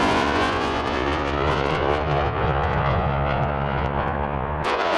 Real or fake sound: fake